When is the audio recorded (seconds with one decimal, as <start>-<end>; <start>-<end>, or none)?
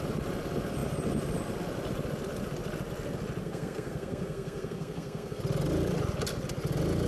0.0-3.4; 5.4-7.1